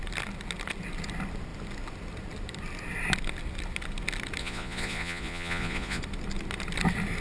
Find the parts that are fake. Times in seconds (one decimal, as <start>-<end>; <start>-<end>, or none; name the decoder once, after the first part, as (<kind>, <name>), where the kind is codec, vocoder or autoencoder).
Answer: 4.4-6.0 (vocoder, Vocos)